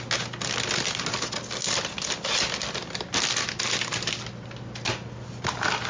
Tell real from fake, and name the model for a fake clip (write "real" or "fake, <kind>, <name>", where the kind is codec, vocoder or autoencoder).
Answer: real